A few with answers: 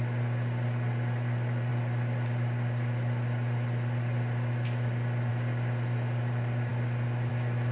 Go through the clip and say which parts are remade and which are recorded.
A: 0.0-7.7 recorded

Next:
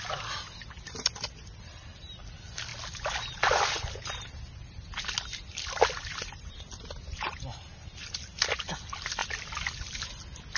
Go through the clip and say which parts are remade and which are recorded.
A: 0.0-10.6 recorded

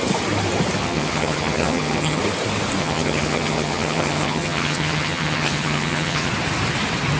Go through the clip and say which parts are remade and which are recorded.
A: 0.0-0.8 recorded; 0.8-2.2 remade; 2.2-2.8 recorded; 2.8-6.3 remade; 6.3-7.2 recorded

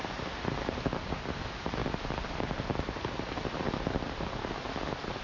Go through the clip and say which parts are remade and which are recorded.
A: 0.0-5.2 recorded

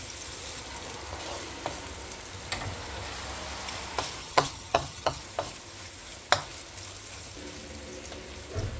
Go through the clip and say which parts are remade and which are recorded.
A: 0.0-4.2 recorded; 4.2-5.2 remade; 5.2-8.8 recorded